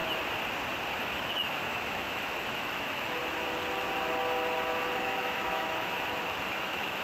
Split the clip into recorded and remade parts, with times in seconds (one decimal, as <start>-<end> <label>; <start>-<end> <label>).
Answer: 0.0-1.0 recorded; 1.0-3.2 remade; 3.2-5.0 recorded; 5.0-7.0 remade